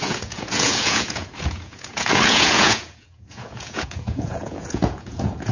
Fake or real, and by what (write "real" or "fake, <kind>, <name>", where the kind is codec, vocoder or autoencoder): fake, vocoder, Vocos